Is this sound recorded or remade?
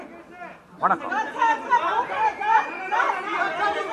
recorded